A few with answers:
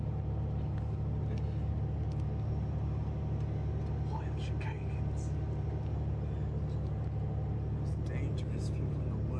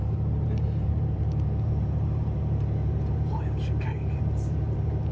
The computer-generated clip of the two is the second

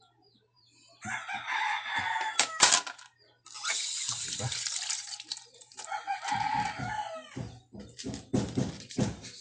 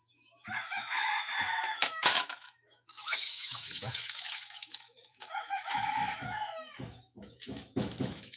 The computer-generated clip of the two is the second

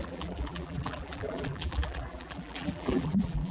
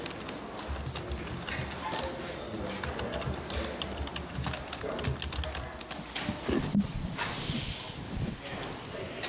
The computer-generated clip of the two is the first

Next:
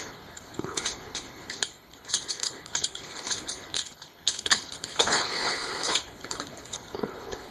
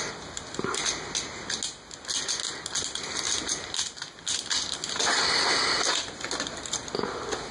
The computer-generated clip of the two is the first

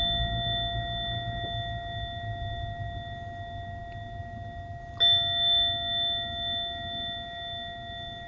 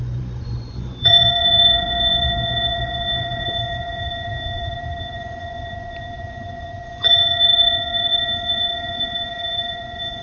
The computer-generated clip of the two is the second